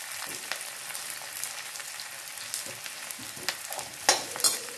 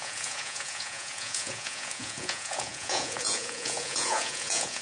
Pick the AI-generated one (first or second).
second